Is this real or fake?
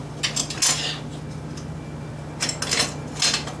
real